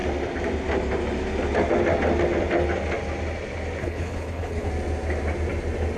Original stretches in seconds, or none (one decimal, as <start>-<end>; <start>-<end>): 0.0-3.8; 4.7-6.0